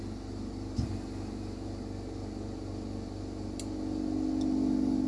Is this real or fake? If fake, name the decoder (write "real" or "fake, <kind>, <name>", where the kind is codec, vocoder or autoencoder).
real